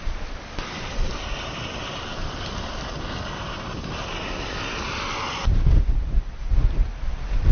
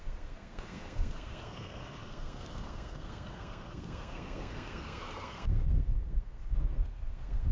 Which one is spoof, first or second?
second